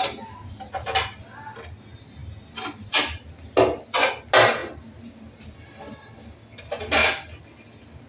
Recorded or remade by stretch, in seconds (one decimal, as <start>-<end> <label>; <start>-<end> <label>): 0.0-4.6 recorded; 4.6-5.1 remade; 5.1-8.1 recorded